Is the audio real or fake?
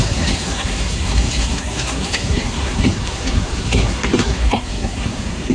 fake